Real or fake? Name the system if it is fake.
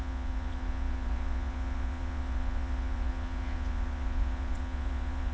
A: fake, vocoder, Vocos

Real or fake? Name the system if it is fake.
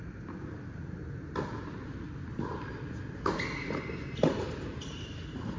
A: real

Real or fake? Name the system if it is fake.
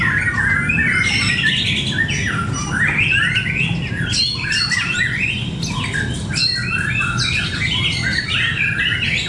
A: real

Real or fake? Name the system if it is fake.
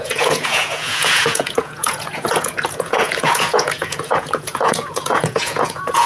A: fake, vocoder, Vocos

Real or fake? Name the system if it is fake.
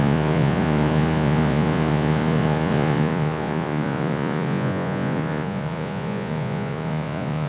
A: fake, vocoder, Vocos